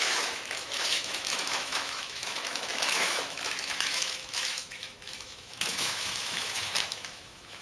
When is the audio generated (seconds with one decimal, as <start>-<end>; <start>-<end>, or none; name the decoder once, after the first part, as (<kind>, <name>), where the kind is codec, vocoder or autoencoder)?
0.0-7.6 (autoencoder, DAC-VAE)